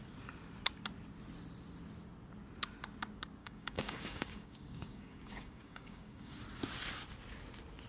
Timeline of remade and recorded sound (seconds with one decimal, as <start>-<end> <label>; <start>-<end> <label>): 0.0-3.4 recorded; 3.4-6.4 remade; 6.4-7.9 recorded